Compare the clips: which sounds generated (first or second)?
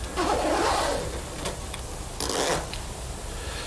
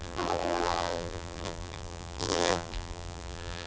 second